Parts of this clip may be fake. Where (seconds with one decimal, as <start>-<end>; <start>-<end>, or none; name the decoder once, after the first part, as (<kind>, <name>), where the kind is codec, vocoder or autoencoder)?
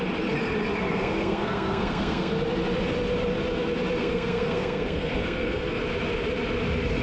0.9-2.3 (codec, SNAC); 4.0-5.8